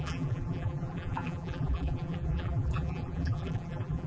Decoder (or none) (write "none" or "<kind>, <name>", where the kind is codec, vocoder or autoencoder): vocoder, BigVGAN v2